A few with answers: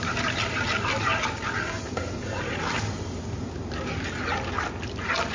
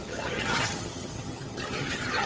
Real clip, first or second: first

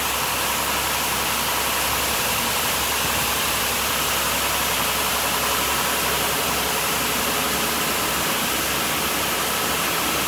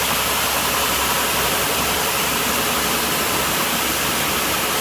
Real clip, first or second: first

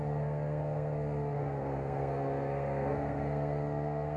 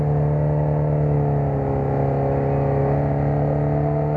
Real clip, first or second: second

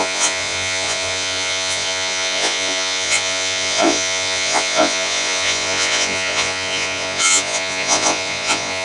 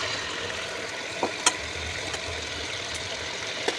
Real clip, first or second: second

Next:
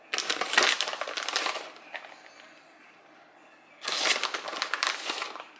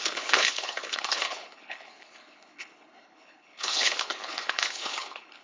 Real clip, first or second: first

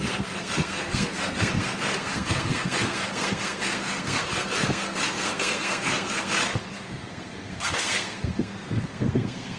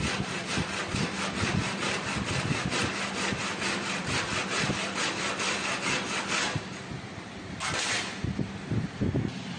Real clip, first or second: second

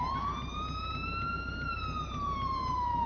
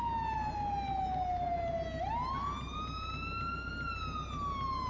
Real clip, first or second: second